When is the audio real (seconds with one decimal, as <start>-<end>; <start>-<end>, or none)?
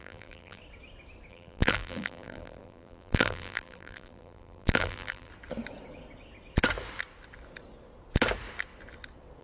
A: 0.6-1.3; 5.3-9.4